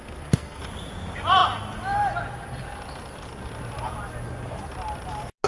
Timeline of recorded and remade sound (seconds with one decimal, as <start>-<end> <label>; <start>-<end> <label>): 0.0-0.6 remade; 0.6-5.5 recorded